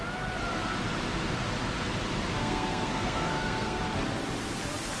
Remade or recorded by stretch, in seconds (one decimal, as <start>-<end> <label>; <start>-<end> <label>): 0.0-2.4 recorded; 2.4-3.8 remade; 3.8-5.0 recorded